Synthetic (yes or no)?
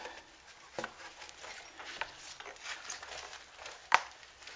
no